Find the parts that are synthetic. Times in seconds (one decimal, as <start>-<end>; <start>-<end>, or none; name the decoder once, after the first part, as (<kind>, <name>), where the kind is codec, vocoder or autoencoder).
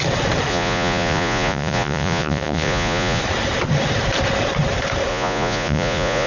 0.5-3.2 (vocoder, Vocos); 5.1-6.3